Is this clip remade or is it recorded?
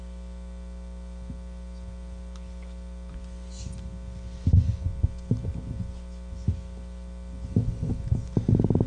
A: recorded